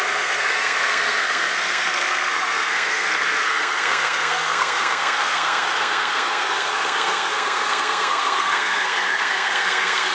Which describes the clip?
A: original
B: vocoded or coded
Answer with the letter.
B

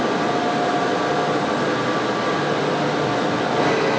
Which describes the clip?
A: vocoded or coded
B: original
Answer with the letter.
B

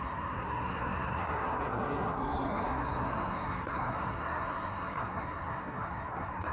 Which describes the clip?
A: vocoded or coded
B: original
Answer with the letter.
A